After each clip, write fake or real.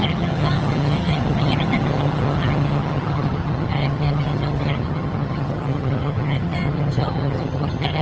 fake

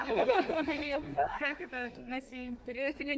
fake